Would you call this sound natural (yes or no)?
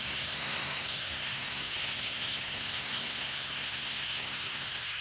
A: no